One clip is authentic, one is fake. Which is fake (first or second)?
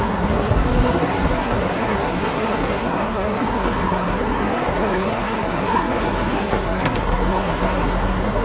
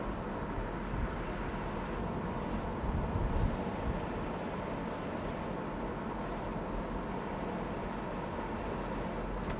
first